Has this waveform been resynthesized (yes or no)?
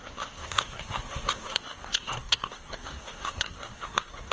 yes